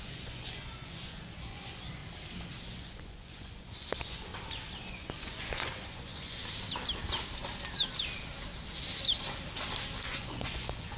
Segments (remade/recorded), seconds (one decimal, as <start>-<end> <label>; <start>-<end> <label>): 0.0-2.0 remade; 2.0-2.7 recorded; 2.7-4.3 remade; 4.3-4.8 recorded; 4.8-6.4 remade; 6.4-10.0 recorded; 10.0-11.0 remade